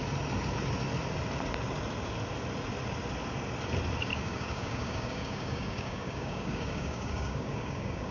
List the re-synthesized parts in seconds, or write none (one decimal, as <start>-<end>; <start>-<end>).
4.1-8.1